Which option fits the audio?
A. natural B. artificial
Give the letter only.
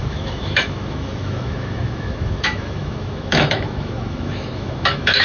B